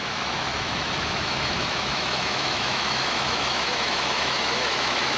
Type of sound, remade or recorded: remade